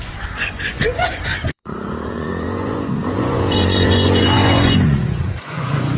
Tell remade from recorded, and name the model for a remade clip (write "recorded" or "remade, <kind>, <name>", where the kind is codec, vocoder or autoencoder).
remade, vocoder, Vocos